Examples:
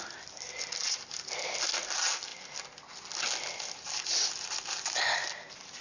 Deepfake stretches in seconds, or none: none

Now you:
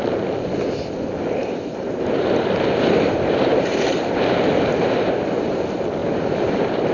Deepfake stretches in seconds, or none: 1.4-5.5 (vocoder, BigVGAN v2); 6.0-6.9

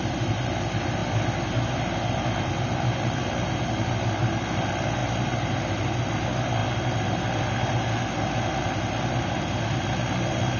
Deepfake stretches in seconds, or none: none

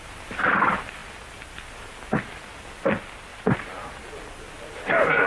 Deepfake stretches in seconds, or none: 3.3-4.0 (vocoder, BigVGAN v2)

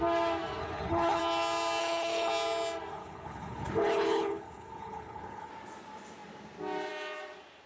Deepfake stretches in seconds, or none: 0.6-1.2 (codec, HILCodec); 1.8-2.3; 2.9-5.5

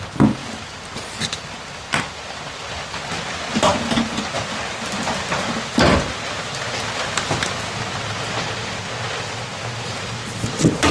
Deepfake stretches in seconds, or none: 0.4-3.1 (vocoder, BigVGAN v2)

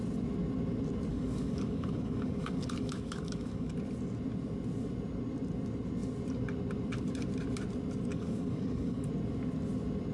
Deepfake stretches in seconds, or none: 1.1-3.7 (codec, DAC); 8.1-9.1

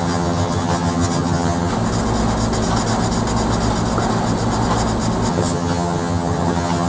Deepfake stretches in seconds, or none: 0.0-1.7 (vocoder, HiFi-GAN); 5.3-6.9